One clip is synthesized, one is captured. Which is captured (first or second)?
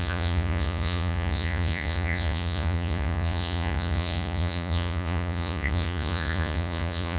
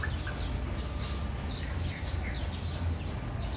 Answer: second